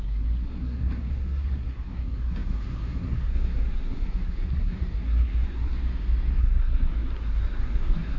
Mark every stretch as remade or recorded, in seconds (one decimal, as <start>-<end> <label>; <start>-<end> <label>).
0.0-5.8 remade; 5.8-6.4 recorded; 6.4-8.2 remade